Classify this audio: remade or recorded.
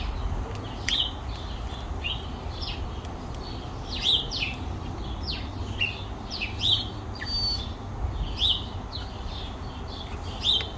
recorded